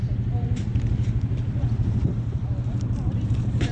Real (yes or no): no